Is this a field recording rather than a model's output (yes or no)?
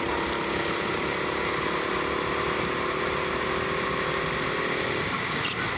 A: yes